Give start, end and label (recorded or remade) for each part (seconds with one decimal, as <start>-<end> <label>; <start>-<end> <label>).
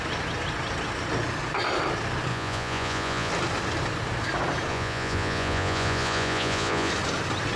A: 0.0-2.3 recorded; 2.3-3.3 remade; 3.3-4.7 recorded; 4.7-6.9 remade; 6.9-7.6 recorded